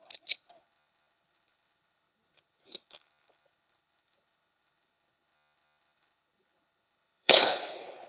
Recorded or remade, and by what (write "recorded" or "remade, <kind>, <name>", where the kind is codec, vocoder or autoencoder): remade, codec, HILCodec